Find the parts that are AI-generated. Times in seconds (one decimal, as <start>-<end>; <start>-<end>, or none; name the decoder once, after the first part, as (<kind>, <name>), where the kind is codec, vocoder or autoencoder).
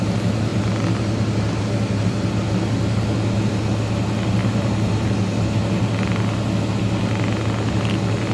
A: 4.4-5.6 (vocoder, BigVGAN v2)